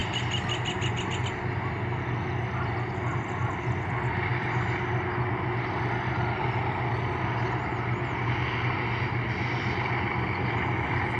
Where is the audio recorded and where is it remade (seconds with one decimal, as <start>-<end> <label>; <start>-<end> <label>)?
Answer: 0.0-0.6 remade; 0.6-4.3 recorded; 4.3-6.9 remade; 6.9-11.2 recorded